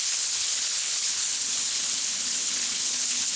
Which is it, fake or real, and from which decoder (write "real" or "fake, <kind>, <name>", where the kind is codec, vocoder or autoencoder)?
fake, codec, HILCodec